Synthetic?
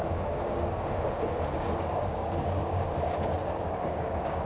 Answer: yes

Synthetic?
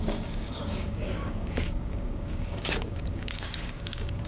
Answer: yes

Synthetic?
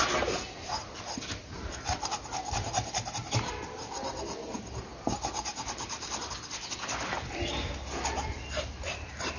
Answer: no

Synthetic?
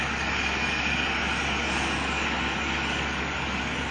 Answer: yes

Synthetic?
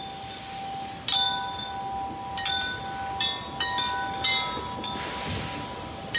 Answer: no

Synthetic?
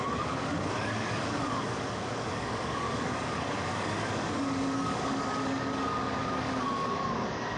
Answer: yes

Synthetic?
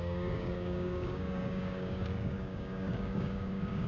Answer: yes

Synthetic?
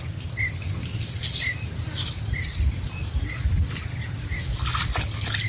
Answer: no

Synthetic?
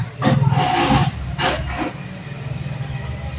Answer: no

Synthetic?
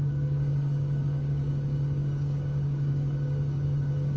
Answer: yes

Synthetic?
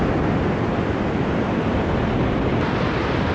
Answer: no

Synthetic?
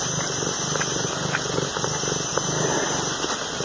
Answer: no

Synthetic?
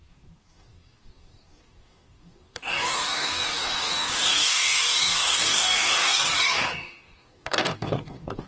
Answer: yes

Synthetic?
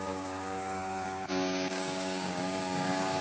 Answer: yes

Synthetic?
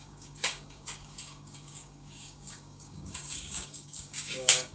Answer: yes